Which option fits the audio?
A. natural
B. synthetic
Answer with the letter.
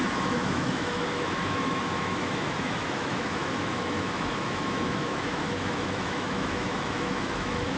B